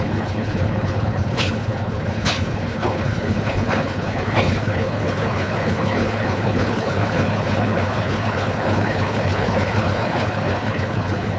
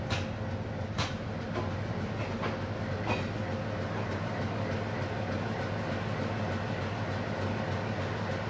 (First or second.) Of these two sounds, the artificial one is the first